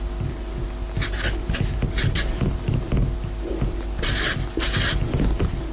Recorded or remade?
recorded